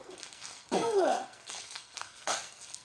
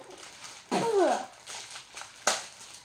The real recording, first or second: second